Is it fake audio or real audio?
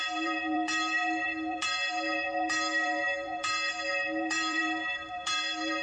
fake